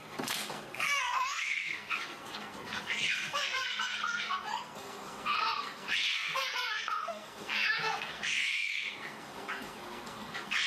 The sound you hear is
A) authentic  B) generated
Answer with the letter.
B